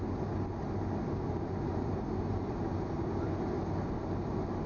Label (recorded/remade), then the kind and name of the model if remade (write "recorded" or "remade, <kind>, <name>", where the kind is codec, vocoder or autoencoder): recorded